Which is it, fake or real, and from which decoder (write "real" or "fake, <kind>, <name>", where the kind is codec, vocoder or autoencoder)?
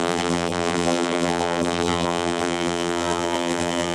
fake, vocoder, BigVGAN v2